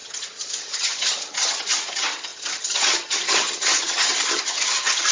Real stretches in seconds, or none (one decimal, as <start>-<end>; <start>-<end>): none